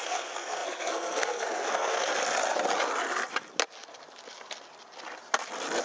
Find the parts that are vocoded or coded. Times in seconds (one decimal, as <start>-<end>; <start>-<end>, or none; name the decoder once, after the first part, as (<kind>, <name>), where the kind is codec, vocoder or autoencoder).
0.0-2.1 (codec, SNAC)